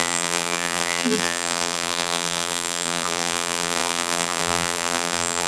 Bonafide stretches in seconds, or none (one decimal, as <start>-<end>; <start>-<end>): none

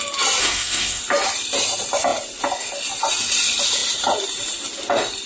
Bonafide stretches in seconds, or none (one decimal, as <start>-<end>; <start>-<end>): 0.0-0.4; 1.0-5.3

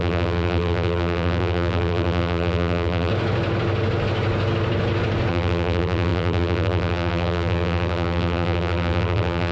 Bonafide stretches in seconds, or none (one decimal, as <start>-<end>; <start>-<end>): 3.1-5.3